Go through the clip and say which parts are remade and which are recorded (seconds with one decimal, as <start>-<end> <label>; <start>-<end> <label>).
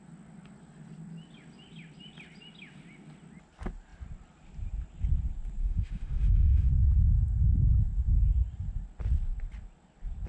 0.0-5.6 recorded; 5.6-6.7 remade; 6.7-10.3 recorded